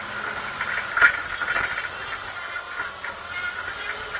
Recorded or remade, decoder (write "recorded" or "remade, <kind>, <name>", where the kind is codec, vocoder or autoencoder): recorded